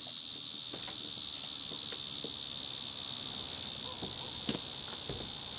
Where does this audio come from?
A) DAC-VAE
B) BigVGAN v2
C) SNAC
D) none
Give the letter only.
D